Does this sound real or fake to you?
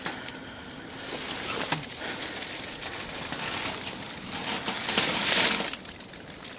real